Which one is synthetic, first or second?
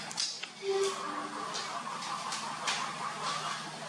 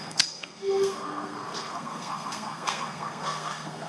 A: second